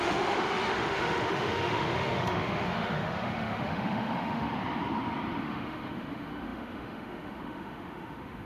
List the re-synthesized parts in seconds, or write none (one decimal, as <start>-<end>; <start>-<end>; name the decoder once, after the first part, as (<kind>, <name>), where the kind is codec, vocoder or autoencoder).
0.0-4.5 (autoencoder, DAC-VAE); 5.4-8.5